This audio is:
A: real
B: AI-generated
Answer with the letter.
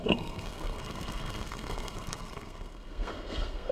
B